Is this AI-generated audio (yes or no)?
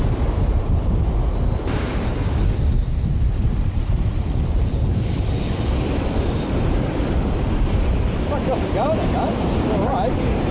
no